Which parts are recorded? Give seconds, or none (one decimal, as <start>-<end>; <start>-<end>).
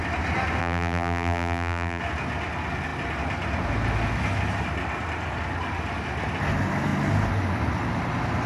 0.0-0.6; 2.0-8.5